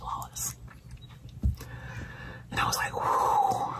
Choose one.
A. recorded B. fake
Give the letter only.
A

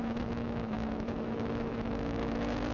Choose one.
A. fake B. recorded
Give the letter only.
A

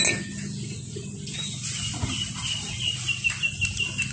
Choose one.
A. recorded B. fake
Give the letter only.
A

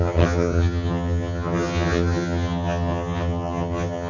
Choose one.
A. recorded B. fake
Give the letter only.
B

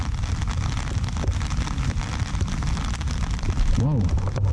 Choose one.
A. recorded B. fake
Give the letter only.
A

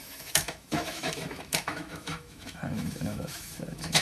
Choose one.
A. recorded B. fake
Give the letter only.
B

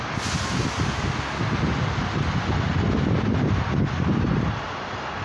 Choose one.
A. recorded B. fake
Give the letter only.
A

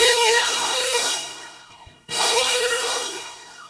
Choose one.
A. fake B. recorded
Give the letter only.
A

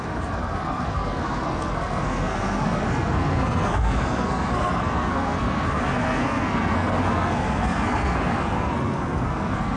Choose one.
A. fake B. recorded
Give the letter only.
A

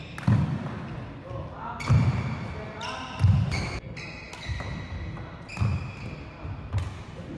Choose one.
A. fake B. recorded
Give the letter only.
B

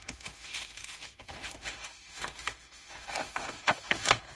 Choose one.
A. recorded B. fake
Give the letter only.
B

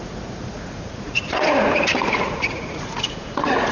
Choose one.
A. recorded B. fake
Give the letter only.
B